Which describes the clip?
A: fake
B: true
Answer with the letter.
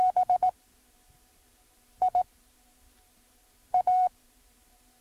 A